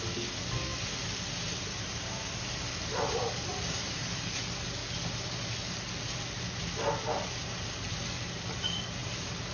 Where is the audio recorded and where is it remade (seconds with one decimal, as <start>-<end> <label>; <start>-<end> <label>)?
0.0-9.0 recorded; 9.0-9.5 remade